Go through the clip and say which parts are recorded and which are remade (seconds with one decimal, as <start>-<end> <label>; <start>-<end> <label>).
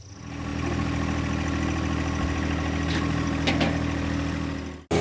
0.0-5.0 recorded